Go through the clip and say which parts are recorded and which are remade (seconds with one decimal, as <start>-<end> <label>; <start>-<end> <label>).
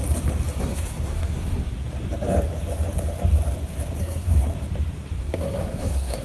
0.0-0.6 recorded; 0.6-1.7 remade; 1.7-4.0 recorded; 4.0-4.5 remade; 4.5-5.2 recorded; 5.2-6.2 remade